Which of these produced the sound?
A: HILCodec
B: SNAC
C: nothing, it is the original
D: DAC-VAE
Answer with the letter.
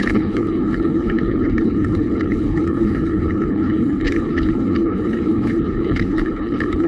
A